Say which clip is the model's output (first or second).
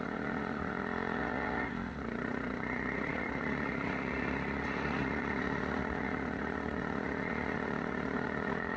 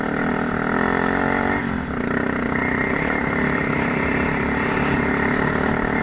first